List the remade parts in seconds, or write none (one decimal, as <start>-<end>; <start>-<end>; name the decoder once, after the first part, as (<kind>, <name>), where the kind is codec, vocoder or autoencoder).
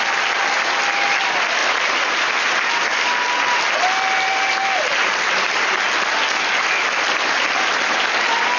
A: none